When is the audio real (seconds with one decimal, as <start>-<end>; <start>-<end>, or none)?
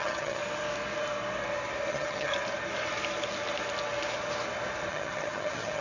0.4-1.9; 2.3-4.9